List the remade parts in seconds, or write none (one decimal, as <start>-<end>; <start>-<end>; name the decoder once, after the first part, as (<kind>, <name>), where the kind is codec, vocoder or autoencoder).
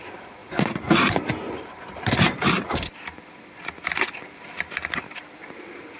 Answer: 0.4-2.7 (vocoder, BigVGAN v2)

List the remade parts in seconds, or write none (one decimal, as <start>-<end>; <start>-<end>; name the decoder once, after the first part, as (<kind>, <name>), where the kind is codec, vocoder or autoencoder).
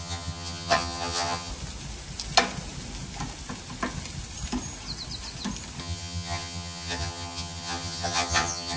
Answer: 0.0-1.5 (vocoder, HiFi-GAN); 5.8-8.8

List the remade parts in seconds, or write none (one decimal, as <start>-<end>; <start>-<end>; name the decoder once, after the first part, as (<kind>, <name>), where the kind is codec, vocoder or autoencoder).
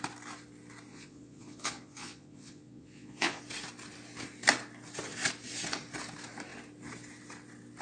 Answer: 0.9-3.4 (vocoder, Vocos)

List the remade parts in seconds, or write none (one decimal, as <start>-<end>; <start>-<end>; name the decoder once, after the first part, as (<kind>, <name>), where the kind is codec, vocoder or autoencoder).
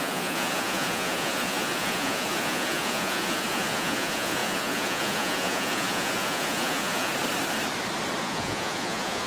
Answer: 0.0-7.1 (vocoder, Vocos); 8.2-9.3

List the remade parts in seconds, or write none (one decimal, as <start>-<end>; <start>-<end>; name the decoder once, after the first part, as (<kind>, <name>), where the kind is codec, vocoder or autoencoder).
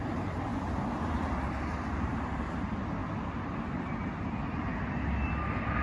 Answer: 0.0-0.5 (vocoder, BigVGAN v2); 1.0-3.0; 3.5-4.7; 5.3-5.8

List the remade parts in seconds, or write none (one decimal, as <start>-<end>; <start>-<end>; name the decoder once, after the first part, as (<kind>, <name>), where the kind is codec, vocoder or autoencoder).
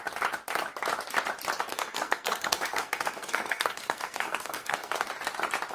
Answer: 1.7-5.1 (codec, SNAC)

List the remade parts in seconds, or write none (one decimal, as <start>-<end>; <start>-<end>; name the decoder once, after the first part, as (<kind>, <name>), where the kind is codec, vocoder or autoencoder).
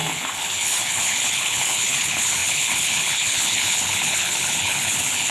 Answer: 0.0-5.3 (codec, HILCodec)